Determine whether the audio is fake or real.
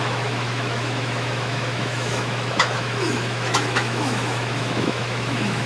fake